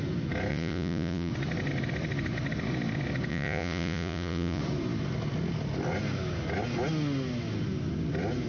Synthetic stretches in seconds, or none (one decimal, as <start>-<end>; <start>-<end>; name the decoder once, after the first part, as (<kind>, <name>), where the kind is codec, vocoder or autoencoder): 0.5-1.3 (vocoder, Vocos); 3.3-4.6